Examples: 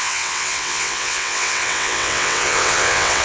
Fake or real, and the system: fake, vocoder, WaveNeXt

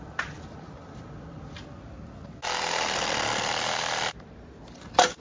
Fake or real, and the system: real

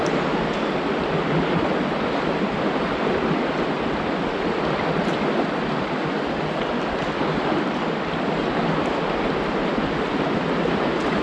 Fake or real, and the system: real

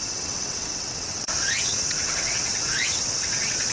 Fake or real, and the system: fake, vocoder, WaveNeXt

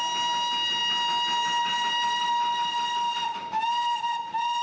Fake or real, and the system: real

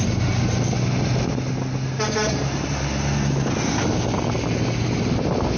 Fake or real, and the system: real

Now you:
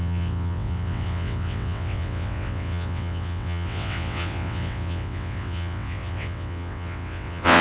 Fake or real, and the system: fake, vocoder, WaveNeXt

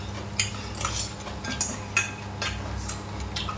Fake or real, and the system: real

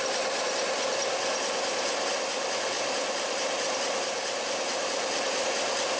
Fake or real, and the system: real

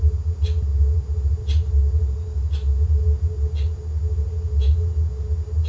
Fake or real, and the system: real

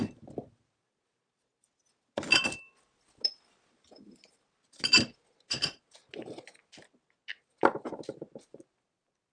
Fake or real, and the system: real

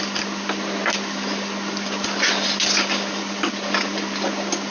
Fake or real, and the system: real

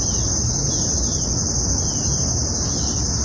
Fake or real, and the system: real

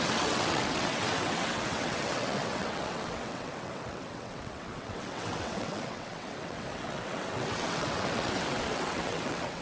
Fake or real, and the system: fake, vocoder, WaveNeXt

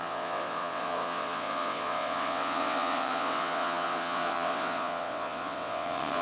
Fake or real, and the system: fake, vocoder, WaveNeXt